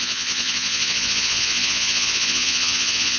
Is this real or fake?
fake